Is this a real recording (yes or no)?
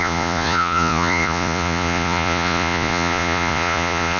no